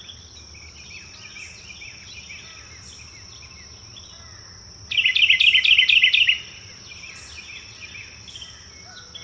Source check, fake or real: real